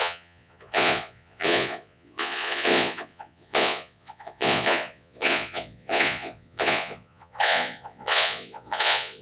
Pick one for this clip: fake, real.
fake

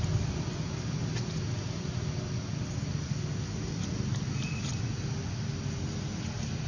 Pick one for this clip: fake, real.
real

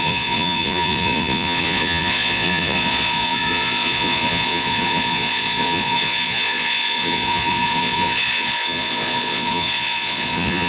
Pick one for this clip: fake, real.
fake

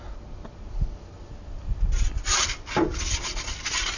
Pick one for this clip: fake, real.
real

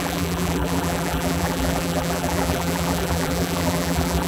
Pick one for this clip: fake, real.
fake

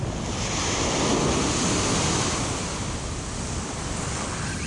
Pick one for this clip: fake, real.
real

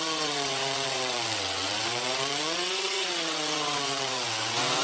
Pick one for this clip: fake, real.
fake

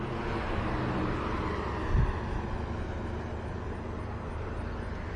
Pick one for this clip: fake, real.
real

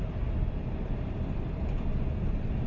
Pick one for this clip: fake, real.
real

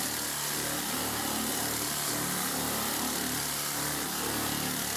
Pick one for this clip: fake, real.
real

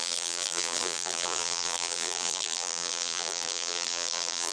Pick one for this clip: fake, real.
fake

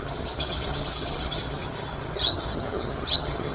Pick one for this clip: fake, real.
fake